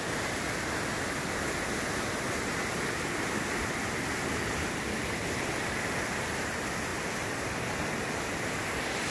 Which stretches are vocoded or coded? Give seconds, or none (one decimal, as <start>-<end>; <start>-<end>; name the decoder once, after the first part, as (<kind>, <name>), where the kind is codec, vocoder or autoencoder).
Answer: none